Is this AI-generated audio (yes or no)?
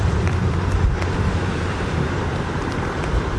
yes